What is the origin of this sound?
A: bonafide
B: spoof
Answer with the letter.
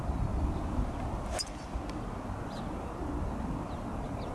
A